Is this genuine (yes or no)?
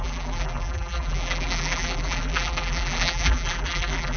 no